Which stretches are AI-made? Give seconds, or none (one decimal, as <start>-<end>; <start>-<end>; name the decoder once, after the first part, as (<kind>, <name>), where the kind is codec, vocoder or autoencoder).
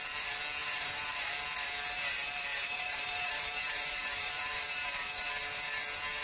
0.6-1.3 (vocoder, BigVGAN v2); 2.5-5.3